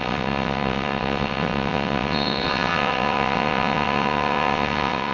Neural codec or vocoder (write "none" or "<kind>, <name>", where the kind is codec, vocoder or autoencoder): vocoder, WaveNeXt